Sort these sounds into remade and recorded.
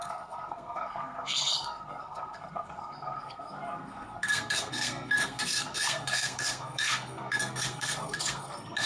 remade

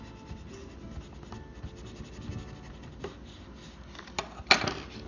recorded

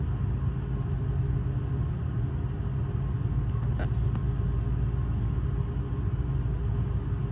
recorded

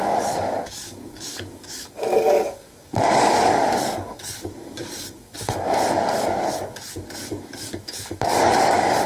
remade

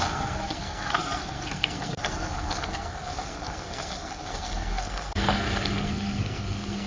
remade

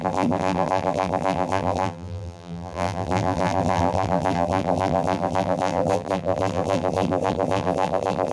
remade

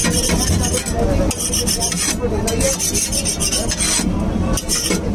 recorded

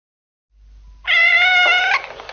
recorded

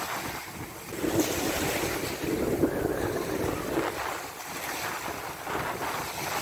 recorded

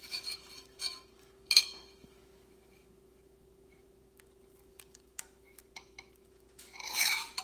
remade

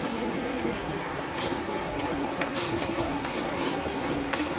remade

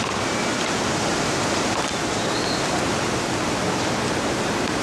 recorded